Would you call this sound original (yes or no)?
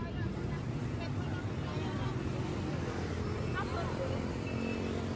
yes